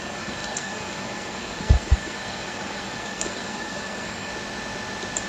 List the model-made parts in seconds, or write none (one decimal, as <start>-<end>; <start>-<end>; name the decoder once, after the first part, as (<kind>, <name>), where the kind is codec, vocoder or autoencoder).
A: 0.0-4.3 (codec, SNAC)